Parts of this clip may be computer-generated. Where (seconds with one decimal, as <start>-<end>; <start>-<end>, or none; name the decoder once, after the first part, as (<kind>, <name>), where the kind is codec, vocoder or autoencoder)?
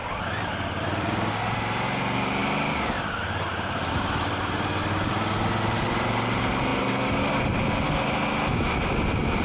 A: 0.0-1.3 (vocoder, BigVGAN v2)